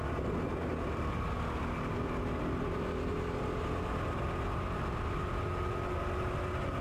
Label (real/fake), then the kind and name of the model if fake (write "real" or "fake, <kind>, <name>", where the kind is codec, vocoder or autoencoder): real